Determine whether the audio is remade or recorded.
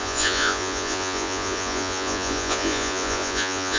remade